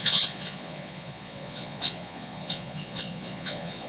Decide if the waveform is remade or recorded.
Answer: remade